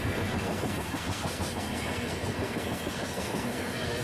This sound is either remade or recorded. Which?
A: remade